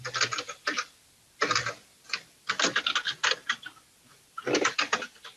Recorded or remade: recorded